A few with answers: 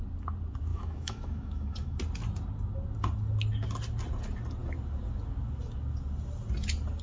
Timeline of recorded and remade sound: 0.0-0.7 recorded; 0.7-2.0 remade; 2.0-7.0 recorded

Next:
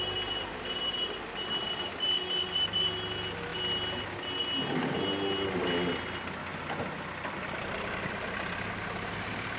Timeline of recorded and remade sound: 0.0-6.5 recorded; 6.5-9.6 remade

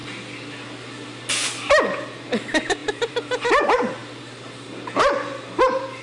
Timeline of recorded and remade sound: 0.0-2.8 recorded; 2.8-3.6 remade; 3.6-6.0 recorded

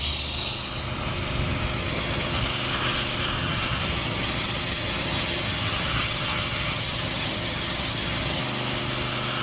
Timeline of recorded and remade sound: 0.0-1.8 recorded; 1.8-2.4 remade; 2.4-3.4 recorded; 3.4-8.4 remade; 8.4-9.4 recorded

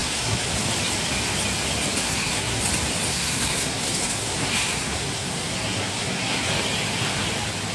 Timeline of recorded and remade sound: 0.0-0.5 remade; 0.5-2.0 recorded; 2.0-2.6 remade; 2.6-3.1 recorded; 3.1-6.5 remade; 6.5-7.7 recorded

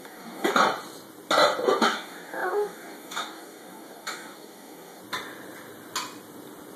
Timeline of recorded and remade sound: 0.0-0.6 remade; 0.6-1.8 recorded; 1.8-5.0 remade; 5.0-6.8 recorded

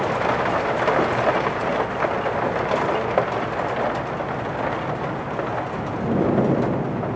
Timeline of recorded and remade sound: 0.0-7.2 recorded

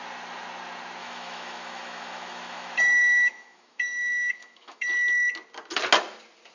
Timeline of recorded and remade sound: 0.0-1.0 recorded; 1.0-4.9 remade; 4.9-6.5 recorded